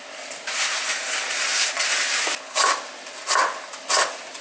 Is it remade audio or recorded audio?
recorded